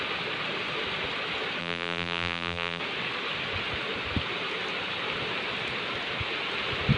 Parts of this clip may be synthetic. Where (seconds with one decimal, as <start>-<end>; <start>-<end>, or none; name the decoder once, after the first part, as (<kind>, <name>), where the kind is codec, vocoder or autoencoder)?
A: 1.6-2.8 (vocoder, BigVGAN v2)